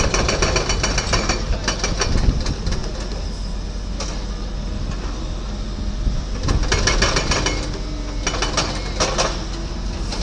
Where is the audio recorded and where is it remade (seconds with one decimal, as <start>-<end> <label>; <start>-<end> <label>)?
0.0-10.2 recorded